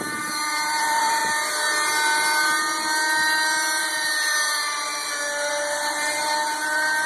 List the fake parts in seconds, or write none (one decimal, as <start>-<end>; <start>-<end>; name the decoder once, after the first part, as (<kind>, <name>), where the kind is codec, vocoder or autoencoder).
0.0-1.2 (vocoder, BigVGAN v2); 3.8-4.9; 5.5-7.1